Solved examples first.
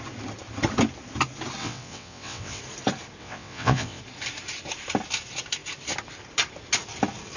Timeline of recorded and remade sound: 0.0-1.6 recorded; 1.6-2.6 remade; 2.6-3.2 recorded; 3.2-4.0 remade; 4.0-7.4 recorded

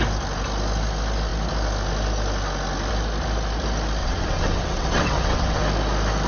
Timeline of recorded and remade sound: 0.0-4.0 recorded; 4.0-5.6 remade; 5.6-6.3 recorded